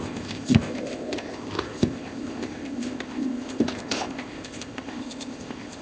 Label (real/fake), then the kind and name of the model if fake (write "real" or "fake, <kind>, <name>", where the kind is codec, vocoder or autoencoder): fake, codec, ZipCodec